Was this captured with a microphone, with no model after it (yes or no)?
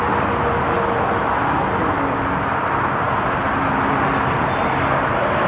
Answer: yes